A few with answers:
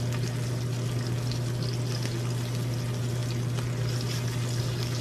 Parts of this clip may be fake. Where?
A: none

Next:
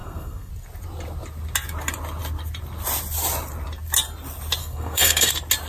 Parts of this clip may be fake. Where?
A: 0.0-0.5 (codec, SNAC); 4.6-5.3

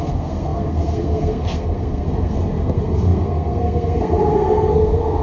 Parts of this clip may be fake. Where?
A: 0.0-5.2 (codec, SNAC)